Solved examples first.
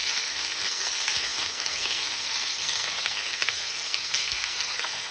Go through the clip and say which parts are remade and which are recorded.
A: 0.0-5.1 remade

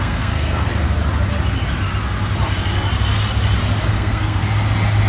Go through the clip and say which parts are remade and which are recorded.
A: 0.0-0.7 remade; 0.7-3.8 recorded; 3.8-4.4 remade; 4.4-5.1 recorded